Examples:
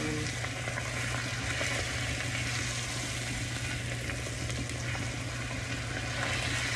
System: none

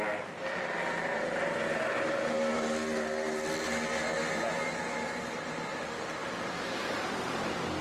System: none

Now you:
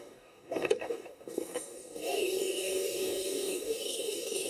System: codec, DAC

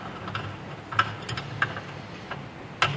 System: none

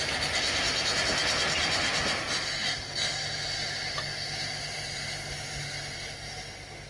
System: none